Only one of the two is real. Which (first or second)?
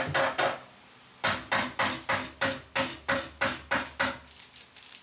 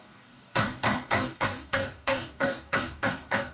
first